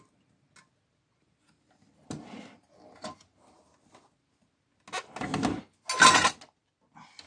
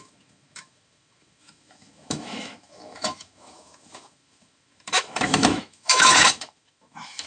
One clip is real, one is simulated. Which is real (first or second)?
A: first